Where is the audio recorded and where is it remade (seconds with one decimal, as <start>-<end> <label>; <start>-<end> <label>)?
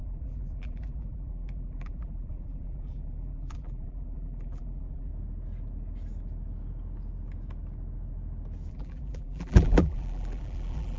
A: 0.0-5.1 remade; 5.1-8.7 recorded; 8.7-11.0 remade